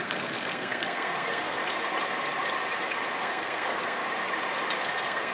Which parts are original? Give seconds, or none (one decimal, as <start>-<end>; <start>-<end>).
1.6-3.2; 4.0-4.8